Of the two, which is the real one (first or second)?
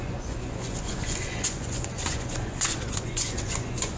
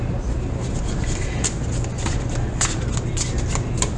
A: second